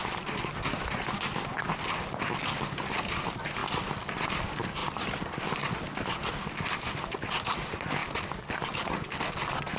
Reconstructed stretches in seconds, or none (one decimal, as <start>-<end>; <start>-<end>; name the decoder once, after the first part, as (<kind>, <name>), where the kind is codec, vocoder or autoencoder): none